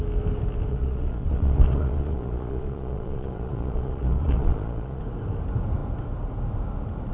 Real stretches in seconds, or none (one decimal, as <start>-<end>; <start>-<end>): 0.0-0.7; 5.0-7.1